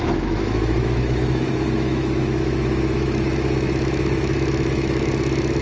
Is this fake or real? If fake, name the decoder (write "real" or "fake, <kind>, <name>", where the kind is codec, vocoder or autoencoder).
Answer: fake, autoencoder, DAC-VAE